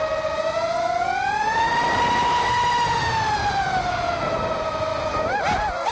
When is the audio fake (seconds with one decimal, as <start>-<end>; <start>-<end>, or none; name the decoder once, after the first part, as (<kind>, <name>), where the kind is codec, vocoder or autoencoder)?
0.0-1.2 (vocoder, BigVGAN v2); 3.8-4.9